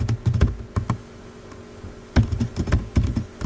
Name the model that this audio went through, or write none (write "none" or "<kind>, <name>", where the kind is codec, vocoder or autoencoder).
none